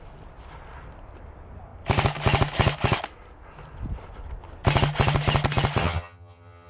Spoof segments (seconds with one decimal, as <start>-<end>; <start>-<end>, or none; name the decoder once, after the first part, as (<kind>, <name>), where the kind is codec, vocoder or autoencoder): 5.8-6.7 (vocoder, HiFi-GAN)